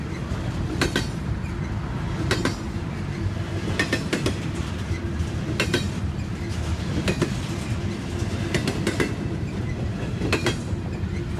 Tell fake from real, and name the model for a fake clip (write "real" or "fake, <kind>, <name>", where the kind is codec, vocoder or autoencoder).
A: real